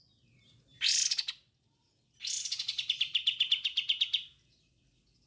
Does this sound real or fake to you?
real